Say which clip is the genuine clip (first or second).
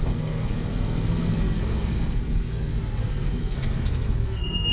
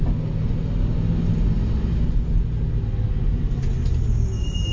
second